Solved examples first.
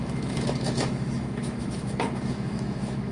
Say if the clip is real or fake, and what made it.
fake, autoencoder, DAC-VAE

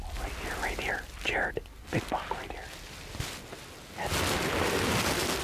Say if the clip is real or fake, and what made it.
real